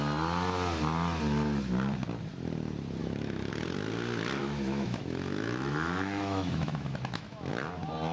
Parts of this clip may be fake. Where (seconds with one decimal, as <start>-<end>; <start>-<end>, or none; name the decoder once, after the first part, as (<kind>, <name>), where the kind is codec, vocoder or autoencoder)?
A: 3.0-3.5 (autoencoder, DAC-VAE); 4.4-7.5